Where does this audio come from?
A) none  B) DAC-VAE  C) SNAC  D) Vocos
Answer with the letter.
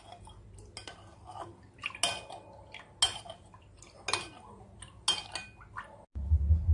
A